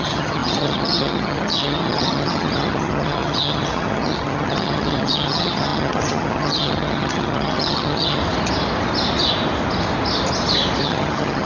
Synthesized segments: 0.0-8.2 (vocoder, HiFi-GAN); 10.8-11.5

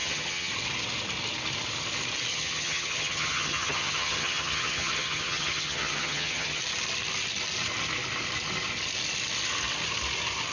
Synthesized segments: 0.0-0.5 (vocoder, HiFi-GAN); 2.3-6.6